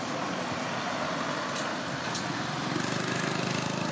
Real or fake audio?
real